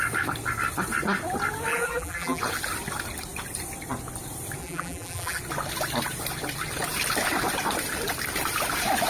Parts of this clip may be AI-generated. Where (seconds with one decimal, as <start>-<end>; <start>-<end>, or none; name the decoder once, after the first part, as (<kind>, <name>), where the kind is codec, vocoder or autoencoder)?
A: 1.7-2.4 (vocoder, BigVGAN v2); 4.6-5.4